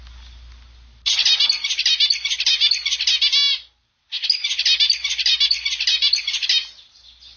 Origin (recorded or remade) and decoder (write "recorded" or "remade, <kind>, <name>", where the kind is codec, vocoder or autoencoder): recorded